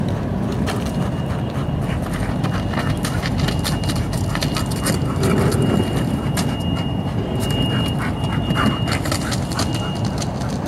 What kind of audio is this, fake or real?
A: real